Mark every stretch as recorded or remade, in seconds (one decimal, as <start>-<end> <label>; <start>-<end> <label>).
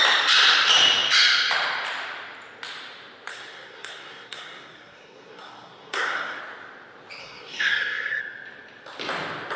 0.0-3.3 recorded; 3.3-6.4 remade; 6.4-7.2 recorded; 7.2-8.2 remade; 8.2-9.6 recorded